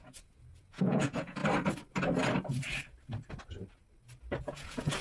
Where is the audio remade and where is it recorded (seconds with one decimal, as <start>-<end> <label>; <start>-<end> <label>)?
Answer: 0.0-1.4 remade; 1.4-4.4 recorded; 4.4-5.0 remade